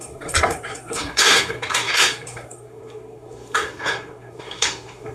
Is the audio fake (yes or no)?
yes